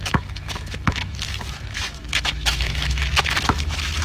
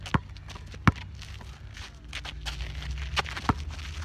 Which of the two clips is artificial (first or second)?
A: first